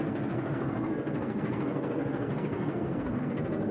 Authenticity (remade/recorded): remade